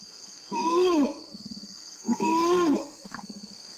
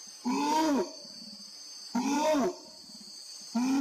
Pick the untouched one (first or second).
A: second